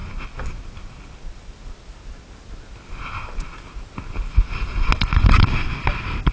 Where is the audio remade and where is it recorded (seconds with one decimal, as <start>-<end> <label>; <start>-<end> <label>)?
0.0-6.3 recorded